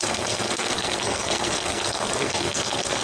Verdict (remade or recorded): remade